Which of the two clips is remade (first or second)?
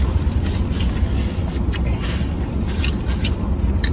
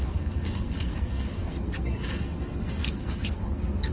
second